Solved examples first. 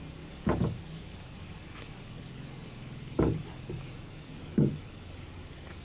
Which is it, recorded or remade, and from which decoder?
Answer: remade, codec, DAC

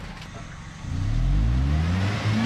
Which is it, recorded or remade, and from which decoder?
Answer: recorded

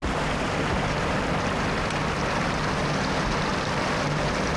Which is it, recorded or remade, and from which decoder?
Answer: recorded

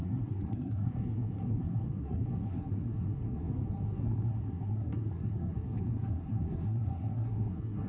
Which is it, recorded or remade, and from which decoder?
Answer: remade, codec, SNAC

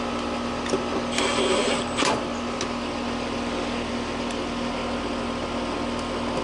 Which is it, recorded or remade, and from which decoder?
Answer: recorded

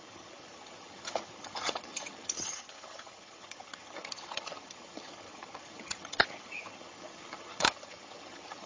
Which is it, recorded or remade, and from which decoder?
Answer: remade, vocoder, HiFi-GAN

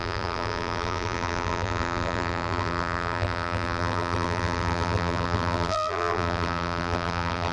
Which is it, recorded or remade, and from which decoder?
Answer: remade, vocoder, BigVGAN v2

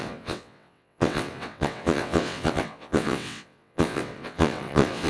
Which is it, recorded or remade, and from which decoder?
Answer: remade, vocoder, WaveNeXt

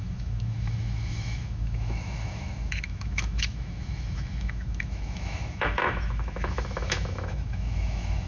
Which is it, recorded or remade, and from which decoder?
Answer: remade, autoencoder, DAC-VAE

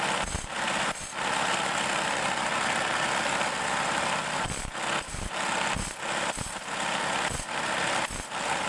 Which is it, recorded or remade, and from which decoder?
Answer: recorded